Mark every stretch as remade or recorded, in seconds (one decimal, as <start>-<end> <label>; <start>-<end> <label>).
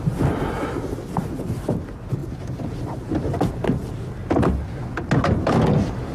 0.0-6.1 recorded